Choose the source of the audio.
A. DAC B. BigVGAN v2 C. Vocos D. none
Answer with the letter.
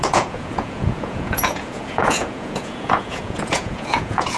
C